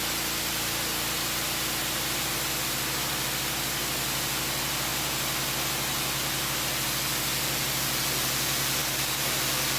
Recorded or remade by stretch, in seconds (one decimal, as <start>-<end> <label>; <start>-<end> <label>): 0.0-8.8 recorded; 8.8-9.4 remade; 9.4-9.8 recorded